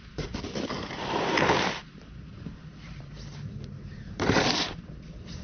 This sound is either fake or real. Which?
fake